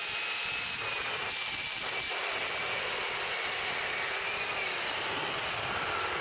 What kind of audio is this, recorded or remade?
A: recorded